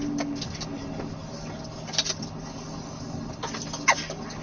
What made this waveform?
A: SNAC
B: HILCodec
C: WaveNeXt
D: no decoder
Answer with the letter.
D